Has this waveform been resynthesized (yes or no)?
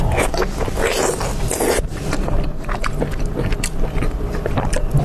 no